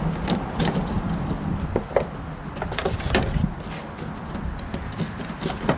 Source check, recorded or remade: recorded